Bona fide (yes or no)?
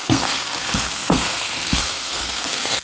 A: no